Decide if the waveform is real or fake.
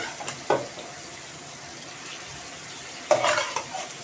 real